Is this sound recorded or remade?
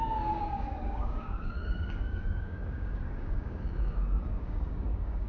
remade